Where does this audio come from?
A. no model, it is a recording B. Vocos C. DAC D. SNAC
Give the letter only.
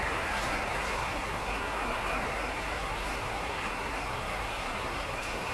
D